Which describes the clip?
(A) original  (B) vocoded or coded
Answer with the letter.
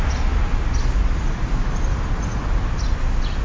A